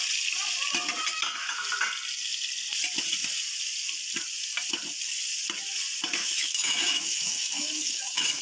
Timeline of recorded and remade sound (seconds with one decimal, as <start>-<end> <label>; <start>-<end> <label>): 0.0-6.2 recorded; 6.2-8.4 remade